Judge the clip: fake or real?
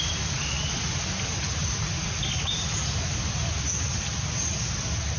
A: real